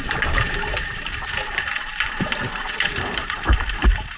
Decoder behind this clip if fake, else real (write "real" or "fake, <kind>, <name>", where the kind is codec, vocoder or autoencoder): fake, vocoder, BigVGAN v2